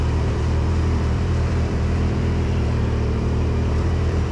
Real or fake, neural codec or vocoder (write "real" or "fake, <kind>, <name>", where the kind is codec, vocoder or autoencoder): fake, vocoder, BigVGAN v2